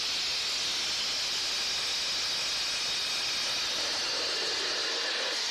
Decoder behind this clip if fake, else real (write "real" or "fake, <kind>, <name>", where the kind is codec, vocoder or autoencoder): real